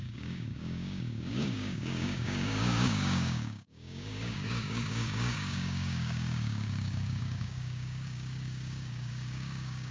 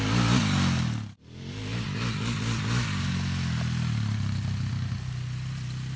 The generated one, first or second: first